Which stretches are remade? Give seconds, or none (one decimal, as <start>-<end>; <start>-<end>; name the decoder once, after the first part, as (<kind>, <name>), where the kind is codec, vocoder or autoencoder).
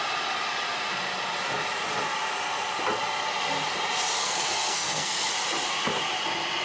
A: 4.2-5.3 (codec, SNAC)